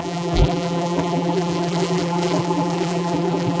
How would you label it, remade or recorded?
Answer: remade